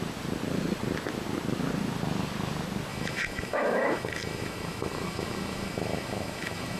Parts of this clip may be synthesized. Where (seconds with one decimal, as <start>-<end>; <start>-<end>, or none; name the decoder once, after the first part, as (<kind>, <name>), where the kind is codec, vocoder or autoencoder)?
2.9-6.8 (autoencoder, DAC-VAE)